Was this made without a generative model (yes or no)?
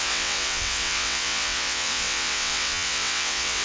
no